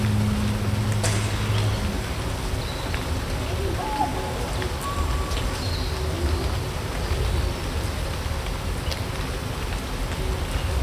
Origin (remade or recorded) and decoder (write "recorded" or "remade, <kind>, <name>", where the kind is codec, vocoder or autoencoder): recorded